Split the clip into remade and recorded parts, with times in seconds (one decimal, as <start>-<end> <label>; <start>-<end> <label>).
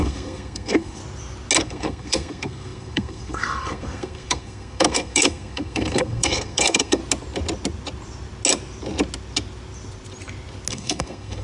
0.0-1.0 remade; 1.0-1.6 recorded; 1.6-7.0 remade; 7.0-10.7 recorded; 10.7-11.4 remade